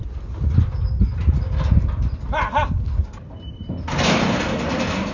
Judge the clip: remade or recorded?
recorded